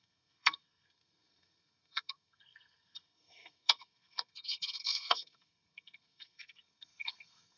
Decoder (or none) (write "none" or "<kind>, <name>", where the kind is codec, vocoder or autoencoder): codec, SNAC